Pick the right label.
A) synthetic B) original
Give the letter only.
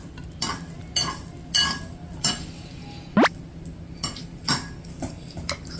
B